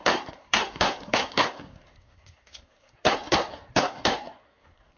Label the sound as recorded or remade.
remade